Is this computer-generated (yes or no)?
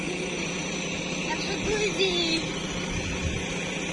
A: no